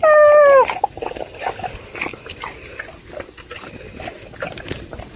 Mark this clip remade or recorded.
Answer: recorded